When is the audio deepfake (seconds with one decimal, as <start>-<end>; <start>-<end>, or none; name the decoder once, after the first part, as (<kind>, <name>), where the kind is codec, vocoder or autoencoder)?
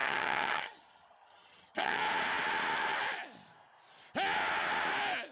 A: 0.0-2.0 (vocoder, HiFi-GAN)